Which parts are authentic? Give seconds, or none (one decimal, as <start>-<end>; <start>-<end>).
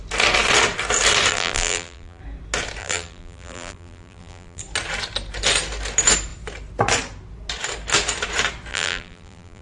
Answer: 0.0-1.3; 2.2-2.8; 4.6-8.7